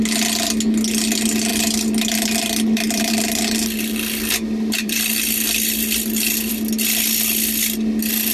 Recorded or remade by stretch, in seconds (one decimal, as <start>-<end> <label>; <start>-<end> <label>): 0.0-1.5 recorded; 1.5-6.5 remade; 6.5-8.3 recorded